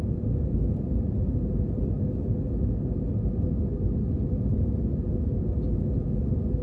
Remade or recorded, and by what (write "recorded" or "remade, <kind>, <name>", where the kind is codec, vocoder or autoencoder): recorded